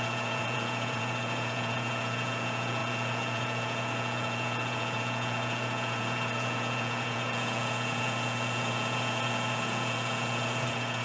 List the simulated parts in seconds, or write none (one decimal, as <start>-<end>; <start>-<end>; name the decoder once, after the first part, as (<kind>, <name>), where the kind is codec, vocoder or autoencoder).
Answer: 0.0-11.0 (vocoder, Vocos)